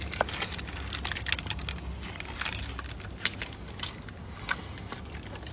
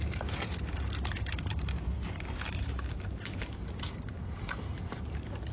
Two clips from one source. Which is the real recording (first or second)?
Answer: first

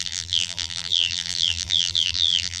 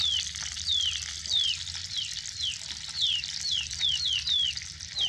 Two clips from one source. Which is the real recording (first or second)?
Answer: second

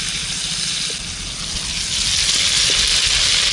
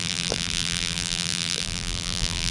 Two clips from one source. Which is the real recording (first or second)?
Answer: first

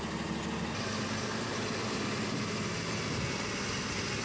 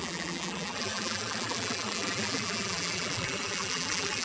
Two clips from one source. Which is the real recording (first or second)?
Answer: first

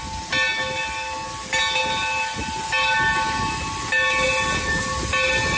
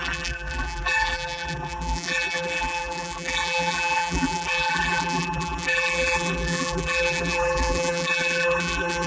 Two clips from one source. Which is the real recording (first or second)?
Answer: first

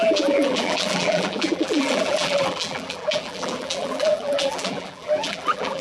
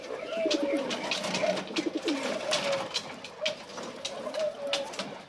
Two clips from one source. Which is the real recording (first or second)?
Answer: second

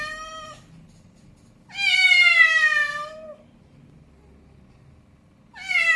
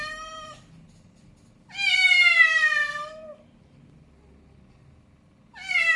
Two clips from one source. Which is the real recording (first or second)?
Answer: first